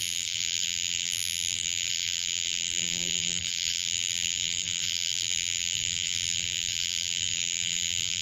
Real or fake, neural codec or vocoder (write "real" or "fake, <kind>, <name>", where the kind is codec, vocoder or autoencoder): fake, vocoder, BigVGAN v2